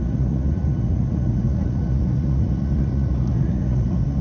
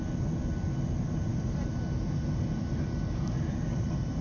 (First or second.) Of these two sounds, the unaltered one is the second